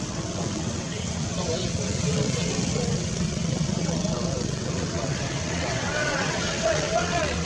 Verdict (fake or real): fake